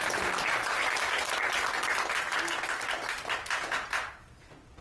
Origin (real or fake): real